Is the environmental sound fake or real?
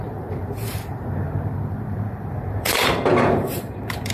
fake